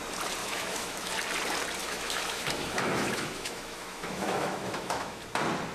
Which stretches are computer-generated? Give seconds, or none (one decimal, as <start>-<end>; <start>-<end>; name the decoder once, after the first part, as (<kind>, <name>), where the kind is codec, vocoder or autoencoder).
0.4-1.1 (autoencoder, DAC-VAE); 1.8-5.2